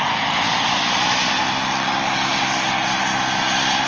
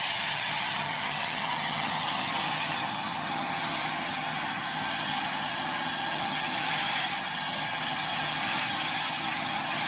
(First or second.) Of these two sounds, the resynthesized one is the second